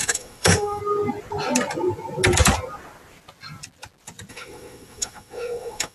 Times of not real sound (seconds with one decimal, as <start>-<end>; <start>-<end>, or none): 0.0-0.8; 4.3-5.9